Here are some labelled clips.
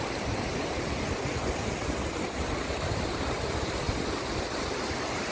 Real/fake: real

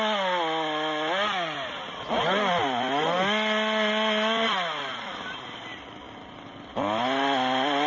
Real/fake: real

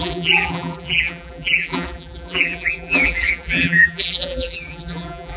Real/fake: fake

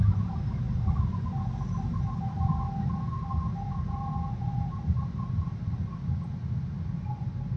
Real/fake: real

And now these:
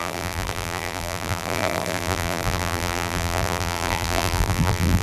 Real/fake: fake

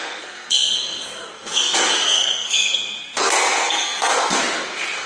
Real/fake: fake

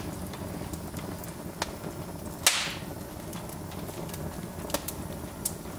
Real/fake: real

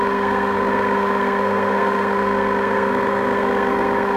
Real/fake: fake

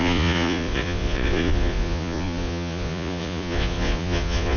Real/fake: fake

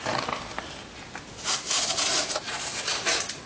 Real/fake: real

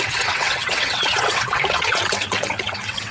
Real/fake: fake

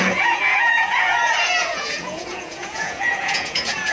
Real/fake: fake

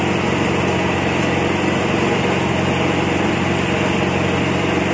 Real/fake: real